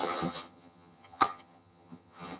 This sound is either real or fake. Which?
fake